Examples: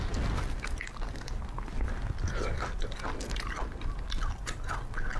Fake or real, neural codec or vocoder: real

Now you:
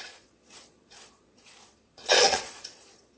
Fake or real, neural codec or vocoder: fake, vocoder, Vocos